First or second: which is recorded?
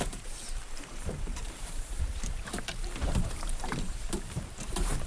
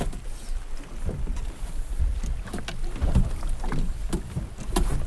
second